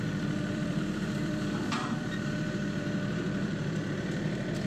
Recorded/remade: remade